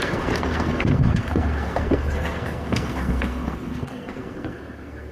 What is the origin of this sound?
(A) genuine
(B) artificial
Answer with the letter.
B